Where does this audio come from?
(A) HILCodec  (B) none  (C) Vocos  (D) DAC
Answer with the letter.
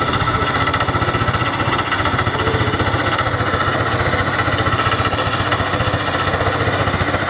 B